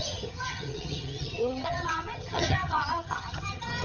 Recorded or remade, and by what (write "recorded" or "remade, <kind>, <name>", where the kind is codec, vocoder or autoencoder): remade, vocoder, HiFi-GAN